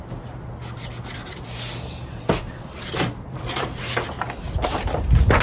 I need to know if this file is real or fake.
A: real